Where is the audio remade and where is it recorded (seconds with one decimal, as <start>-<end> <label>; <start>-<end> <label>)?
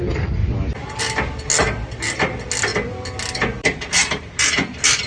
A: 0.0-5.1 recorded